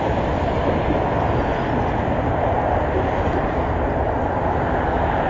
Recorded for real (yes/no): yes